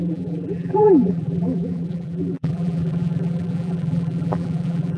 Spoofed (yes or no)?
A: yes